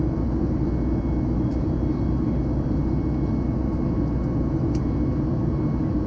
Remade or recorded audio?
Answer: recorded